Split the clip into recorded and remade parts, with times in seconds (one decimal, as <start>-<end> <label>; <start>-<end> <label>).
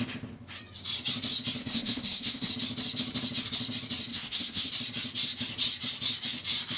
0.0-1.6 recorded; 1.6-2.5 remade; 2.5-4.1 recorded; 4.1-4.7 remade; 4.7-6.8 recorded